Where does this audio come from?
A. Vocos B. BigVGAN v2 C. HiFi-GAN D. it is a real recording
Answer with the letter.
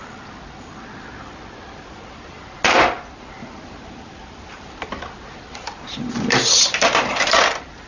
D